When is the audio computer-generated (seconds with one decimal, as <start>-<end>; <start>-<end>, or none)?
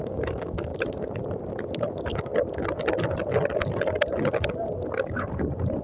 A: 0.0-0.7; 1.9-2.3